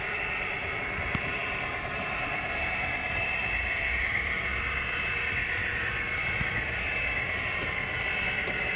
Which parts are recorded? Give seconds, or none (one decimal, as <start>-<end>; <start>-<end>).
1.4-1.9